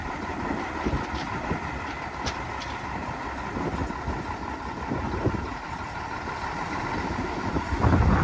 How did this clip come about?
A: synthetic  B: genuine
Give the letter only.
A